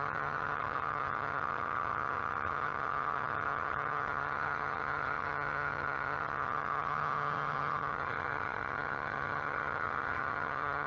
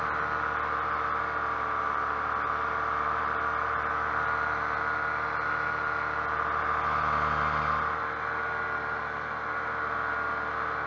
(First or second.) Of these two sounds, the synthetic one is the first